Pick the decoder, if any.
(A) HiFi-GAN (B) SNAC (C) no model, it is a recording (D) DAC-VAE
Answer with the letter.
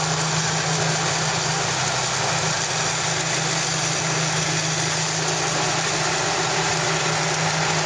C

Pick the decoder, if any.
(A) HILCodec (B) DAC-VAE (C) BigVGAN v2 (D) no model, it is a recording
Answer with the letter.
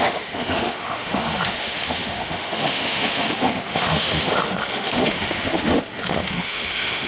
B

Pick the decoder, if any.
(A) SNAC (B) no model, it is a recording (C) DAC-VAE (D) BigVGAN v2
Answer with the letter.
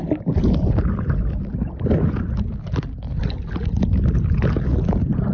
B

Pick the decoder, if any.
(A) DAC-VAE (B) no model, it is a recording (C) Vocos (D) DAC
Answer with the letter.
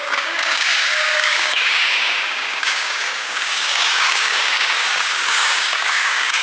D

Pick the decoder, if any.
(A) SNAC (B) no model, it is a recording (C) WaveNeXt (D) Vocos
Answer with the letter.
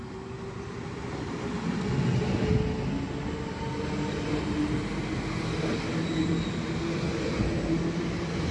B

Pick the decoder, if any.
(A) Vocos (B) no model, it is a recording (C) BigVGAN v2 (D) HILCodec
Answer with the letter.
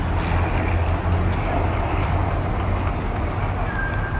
B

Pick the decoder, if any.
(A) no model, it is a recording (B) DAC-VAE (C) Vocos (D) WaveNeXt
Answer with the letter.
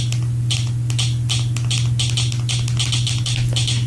A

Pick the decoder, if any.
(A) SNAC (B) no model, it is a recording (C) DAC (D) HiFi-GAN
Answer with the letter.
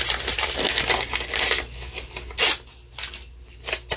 B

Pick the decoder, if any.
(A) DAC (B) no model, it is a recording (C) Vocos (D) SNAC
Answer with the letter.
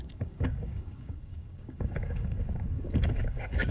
A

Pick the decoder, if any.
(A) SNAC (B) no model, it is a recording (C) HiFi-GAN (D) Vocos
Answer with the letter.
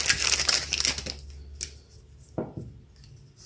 B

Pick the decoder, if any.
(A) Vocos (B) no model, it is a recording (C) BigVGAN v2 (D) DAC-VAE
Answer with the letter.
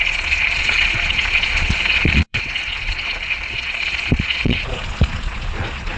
A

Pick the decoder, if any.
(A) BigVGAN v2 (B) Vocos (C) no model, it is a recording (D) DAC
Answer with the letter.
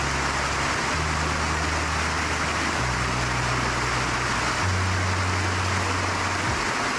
C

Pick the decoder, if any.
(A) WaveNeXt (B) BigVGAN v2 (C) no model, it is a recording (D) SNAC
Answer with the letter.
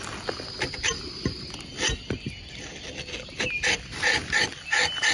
C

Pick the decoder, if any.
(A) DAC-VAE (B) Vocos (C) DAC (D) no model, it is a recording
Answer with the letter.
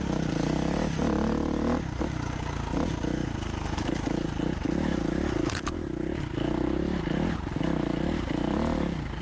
D